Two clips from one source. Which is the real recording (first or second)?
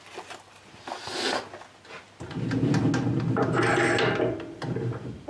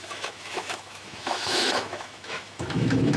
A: first